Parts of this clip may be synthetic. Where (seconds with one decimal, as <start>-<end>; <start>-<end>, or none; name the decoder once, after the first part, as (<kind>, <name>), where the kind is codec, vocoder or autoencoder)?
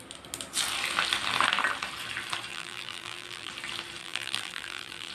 2.5-3.5 (vocoder, BigVGAN v2); 4.0-5.1